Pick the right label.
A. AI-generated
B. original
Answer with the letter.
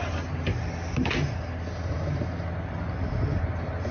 B